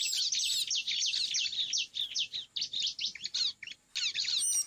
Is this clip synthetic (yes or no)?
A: no